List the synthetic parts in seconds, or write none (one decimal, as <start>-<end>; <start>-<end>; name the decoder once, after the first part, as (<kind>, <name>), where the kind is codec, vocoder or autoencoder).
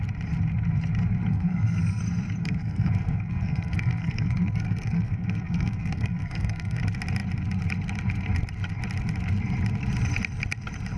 1.3-2.0 (codec, SNAC); 2.4-6.8